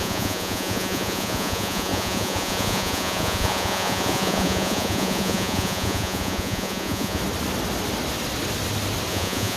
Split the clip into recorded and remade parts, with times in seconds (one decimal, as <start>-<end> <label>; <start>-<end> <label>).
0.0-7.2 remade; 7.2-9.1 recorded; 9.1-9.6 remade